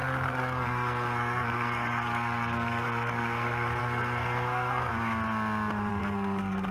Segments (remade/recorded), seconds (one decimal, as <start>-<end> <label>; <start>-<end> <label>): 0.0-4.9 remade; 4.9-5.9 recorded; 5.9-6.7 remade